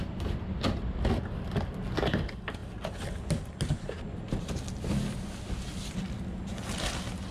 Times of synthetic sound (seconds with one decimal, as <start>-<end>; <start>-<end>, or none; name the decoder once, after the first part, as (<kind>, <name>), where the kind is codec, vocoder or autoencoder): none